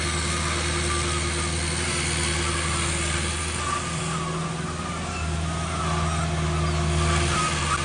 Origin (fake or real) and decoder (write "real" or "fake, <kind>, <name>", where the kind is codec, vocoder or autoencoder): real